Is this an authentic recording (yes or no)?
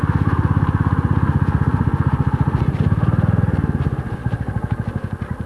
yes